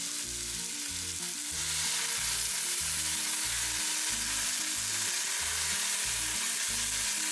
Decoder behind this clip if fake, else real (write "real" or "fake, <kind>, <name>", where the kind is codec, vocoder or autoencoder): real